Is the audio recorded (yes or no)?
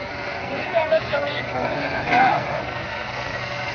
no